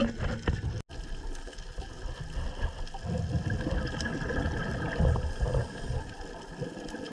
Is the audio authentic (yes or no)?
yes